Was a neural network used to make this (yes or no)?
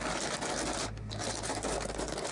no